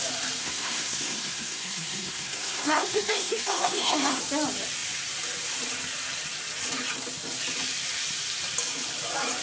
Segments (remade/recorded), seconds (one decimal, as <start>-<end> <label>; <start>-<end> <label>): 0.0-0.4 recorded; 0.4-4.2 remade; 4.2-9.4 recorded